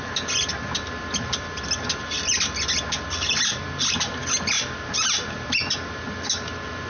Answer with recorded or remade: recorded